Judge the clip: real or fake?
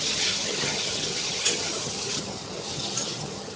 fake